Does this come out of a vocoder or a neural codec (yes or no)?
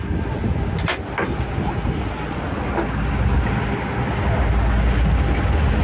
no